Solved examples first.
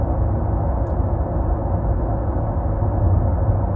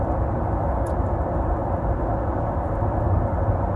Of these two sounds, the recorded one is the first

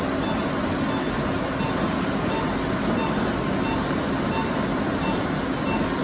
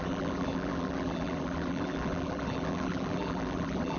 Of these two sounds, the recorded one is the first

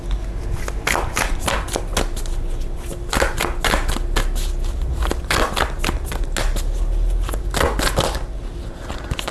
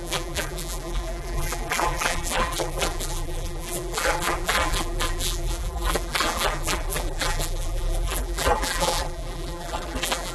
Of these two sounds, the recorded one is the first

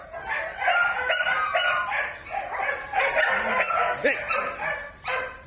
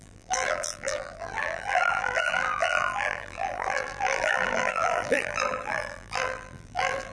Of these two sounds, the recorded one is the first